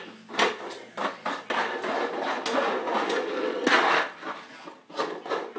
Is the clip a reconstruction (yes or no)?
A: no